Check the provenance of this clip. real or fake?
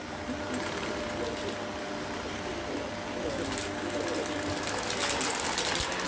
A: real